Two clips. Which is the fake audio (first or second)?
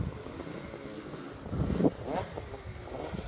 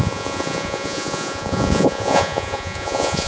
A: second